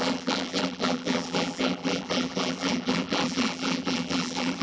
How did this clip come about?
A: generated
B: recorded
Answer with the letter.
A